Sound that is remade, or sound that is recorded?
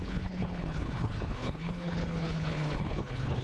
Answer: remade